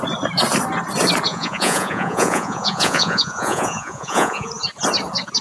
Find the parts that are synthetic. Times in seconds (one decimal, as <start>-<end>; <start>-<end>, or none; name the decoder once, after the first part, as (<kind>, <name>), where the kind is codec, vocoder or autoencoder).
1.3-4.5 (vocoder, Vocos)